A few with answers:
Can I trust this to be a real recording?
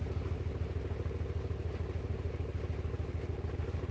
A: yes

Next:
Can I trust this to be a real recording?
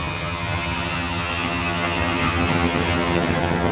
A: no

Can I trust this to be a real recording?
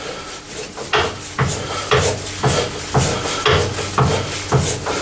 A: yes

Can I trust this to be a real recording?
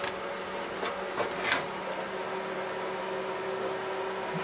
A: yes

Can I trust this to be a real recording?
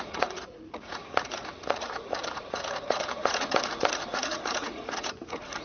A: no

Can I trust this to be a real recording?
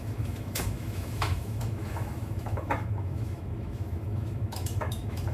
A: no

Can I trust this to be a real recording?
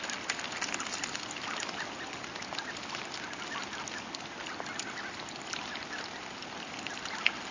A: yes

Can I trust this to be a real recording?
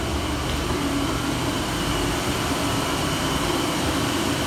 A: no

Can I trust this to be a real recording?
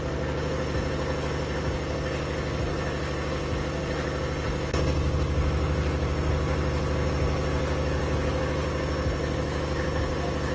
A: yes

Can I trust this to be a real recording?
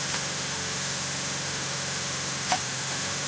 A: no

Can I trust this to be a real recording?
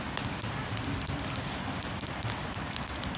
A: yes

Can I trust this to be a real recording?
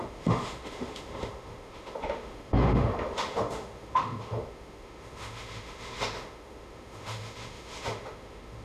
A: no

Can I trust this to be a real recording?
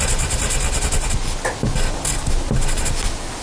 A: yes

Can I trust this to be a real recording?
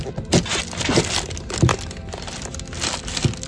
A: yes